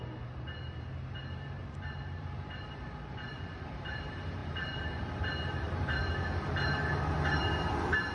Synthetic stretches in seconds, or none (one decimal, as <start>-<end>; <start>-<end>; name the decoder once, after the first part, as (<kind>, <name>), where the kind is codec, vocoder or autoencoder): 0.0-6.0 (vocoder, BigVGAN v2); 6.5-8.1

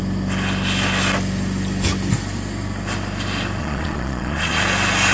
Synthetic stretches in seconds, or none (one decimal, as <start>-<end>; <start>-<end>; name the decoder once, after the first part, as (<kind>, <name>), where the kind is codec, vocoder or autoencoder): 3.6-4.6 (vocoder, Vocos)

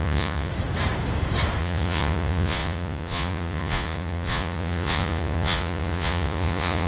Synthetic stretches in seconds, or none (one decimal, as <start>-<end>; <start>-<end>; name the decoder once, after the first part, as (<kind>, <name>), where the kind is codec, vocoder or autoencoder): 0.0-0.5 (vocoder, Vocos); 1.6-6.9

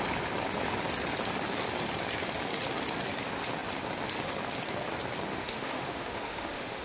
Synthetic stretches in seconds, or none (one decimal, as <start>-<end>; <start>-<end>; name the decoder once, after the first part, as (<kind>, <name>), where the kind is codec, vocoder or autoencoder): 5.3-6.8 (autoencoder, DAC-VAE)

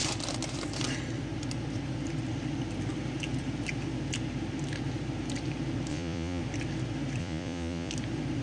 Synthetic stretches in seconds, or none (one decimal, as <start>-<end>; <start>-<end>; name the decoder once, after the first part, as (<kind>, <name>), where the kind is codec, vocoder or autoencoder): 5.9-6.4 (vocoder, Vocos); 7.2-7.9